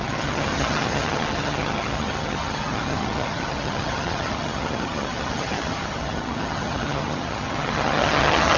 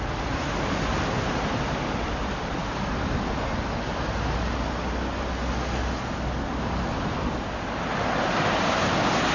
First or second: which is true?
second